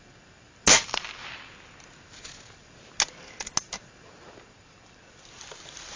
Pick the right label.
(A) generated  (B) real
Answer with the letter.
B